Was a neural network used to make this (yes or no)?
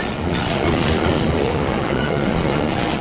yes